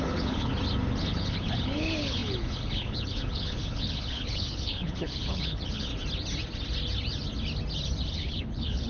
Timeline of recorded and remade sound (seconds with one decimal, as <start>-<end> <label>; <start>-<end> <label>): 0.0-0.5 remade; 0.5-1.0 recorded; 1.0-5.9 remade; 5.9-8.1 recorded; 8.1-8.9 remade